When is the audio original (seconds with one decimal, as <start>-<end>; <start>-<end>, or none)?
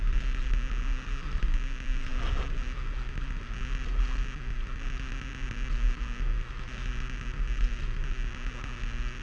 0.0-9.2